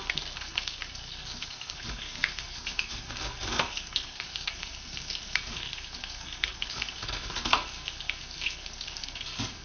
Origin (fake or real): fake